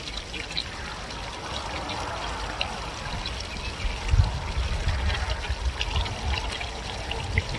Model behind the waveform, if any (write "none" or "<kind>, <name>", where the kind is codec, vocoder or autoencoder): none